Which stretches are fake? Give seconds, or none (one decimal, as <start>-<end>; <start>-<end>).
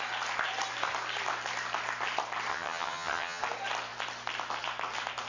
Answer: 2.5-3.4